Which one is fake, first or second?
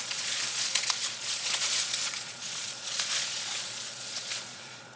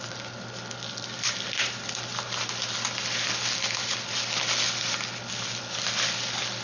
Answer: first